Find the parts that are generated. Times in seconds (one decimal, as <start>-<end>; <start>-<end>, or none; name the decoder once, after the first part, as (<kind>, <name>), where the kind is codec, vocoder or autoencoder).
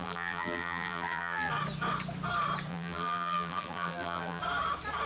0.0-1.5 (vocoder, BigVGAN v2); 2.7-4.4